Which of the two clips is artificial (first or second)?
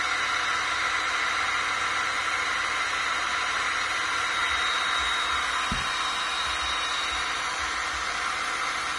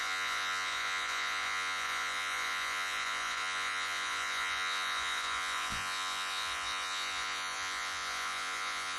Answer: second